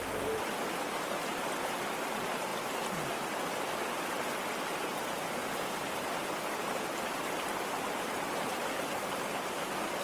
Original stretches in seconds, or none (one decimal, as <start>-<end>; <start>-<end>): 0.0-10.0